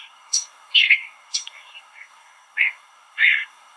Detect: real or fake fake